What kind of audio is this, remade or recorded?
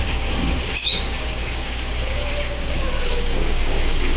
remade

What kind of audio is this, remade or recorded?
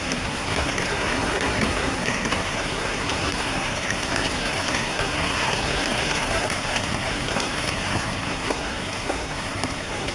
remade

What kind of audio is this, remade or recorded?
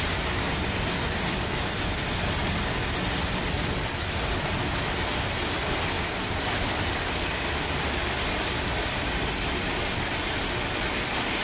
recorded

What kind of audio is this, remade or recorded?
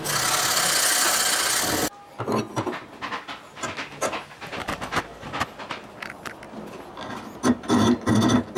recorded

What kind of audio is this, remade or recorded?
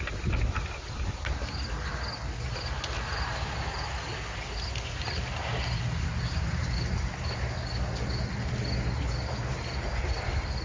recorded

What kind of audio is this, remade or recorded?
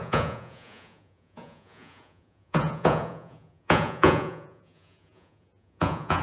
remade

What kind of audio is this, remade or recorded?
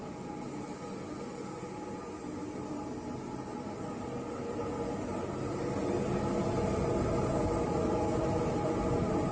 recorded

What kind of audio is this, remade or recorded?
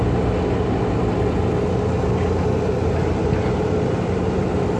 recorded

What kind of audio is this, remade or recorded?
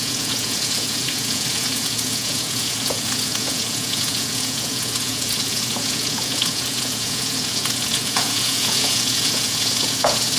remade